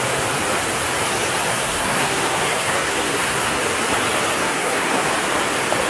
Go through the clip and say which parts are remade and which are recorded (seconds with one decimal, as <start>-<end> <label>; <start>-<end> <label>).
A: 0.0-1.5 recorded; 1.5-3.6 remade; 3.6-4.4 recorded; 4.4-5.1 remade; 5.1-5.9 recorded